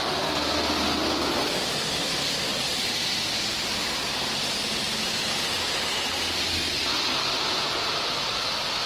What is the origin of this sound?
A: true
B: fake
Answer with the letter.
A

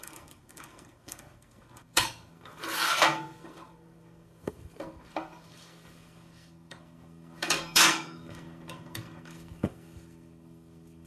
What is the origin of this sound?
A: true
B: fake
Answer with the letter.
B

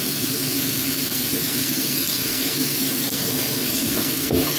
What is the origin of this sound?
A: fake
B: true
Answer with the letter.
A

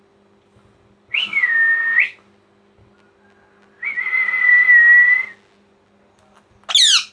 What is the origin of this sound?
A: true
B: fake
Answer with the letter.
A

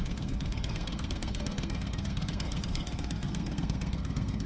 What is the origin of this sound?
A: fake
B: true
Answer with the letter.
A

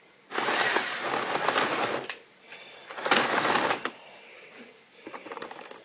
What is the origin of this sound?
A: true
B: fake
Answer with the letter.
A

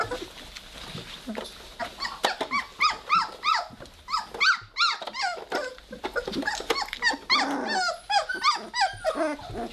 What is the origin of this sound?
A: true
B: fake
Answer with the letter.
A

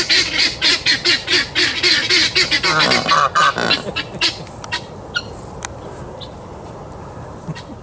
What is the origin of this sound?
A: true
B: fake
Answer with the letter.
A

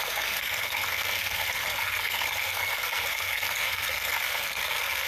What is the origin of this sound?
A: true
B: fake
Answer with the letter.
B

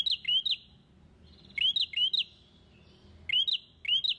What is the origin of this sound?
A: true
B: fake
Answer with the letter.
A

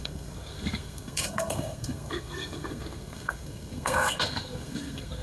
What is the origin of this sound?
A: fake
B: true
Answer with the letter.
A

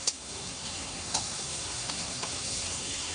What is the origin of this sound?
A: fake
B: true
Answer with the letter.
A